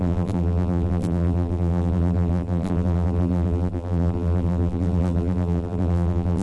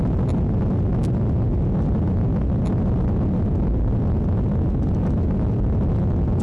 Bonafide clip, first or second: second